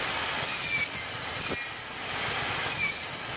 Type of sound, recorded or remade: recorded